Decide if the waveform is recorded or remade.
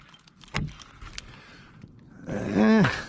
recorded